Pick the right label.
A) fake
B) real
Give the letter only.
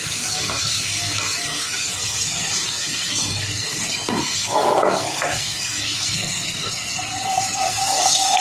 A